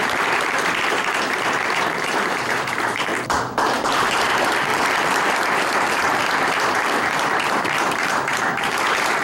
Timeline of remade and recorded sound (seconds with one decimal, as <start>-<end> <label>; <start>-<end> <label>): 0.0-3.1 remade; 3.1-3.7 recorded; 3.7-4.7 remade; 4.7-5.2 recorded; 5.2-9.2 remade